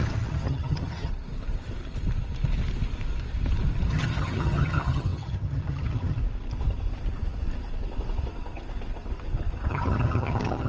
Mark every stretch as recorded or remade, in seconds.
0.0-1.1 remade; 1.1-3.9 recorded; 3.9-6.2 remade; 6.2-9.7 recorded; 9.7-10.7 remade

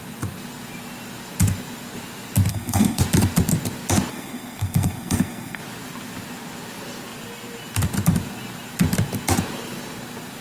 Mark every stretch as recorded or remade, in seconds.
0.0-2.5 recorded; 2.5-3.0 remade; 3.0-4.1 recorded; 4.1-5.6 remade; 5.6-10.4 recorded

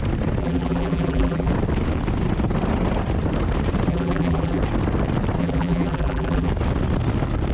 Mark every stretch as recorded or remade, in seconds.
0.0-0.4 recorded; 0.4-1.5 remade; 1.5-3.9 recorded; 3.9-4.6 remade; 4.6-5.4 recorded; 5.4-6.5 remade; 6.5-7.5 recorded

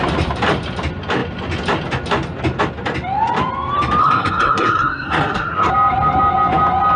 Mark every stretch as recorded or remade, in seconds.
0.0-4.0 recorded; 4.0-5.7 remade; 5.7-7.0 recorded

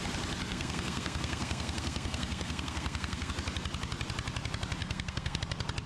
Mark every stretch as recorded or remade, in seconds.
0.0-0.5 recorded; 0.5-3.3 remade; 3.3-4.8 recorded; 4.8-5.4 remade; 5.4-5.9 recorded

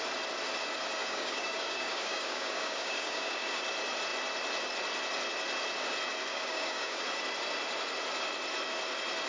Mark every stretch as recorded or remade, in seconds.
0.0-1.0 recorded; 1.0-3.6 remade; 3.6-6.3 recorded; 6.3-7.0 remade; 7.0-9.3 recorded

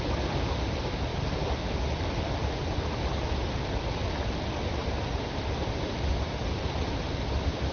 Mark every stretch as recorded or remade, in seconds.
0.0-7.7 recorded